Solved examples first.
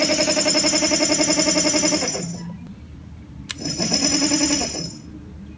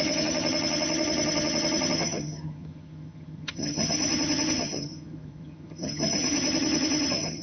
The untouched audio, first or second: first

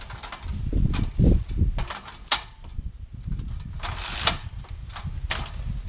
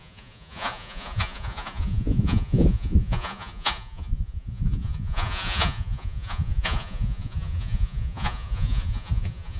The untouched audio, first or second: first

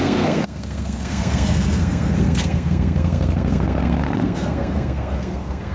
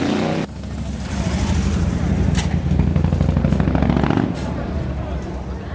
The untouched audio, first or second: second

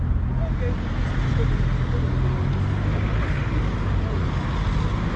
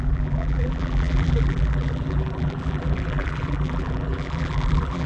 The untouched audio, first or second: first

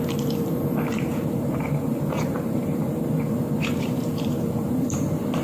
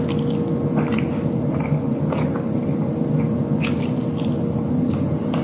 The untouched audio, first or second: second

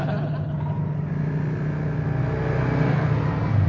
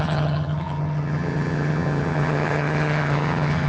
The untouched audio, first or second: first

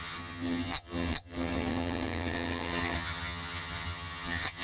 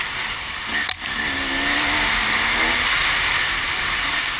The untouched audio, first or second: second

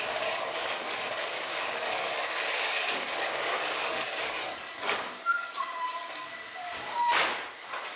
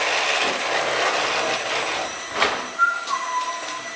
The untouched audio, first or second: second